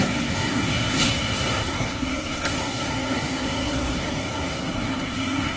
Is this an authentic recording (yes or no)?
no